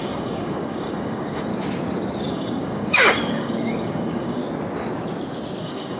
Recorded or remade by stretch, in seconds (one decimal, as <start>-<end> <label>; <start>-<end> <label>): 0.0-1.5 remade; 1.5-2.3 recorded; 2.3-4.4 remade; 4.4-5.6 recorded; 5.6-6.0 remade